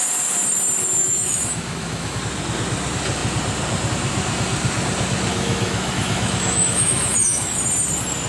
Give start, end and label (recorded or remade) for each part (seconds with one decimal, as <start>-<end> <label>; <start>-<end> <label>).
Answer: 0.0-1.0 recorded; 1.0-2.2 remade; 2.2-5.3 recorded; 5.3-7.6 remade; 7.6-8.3 recorded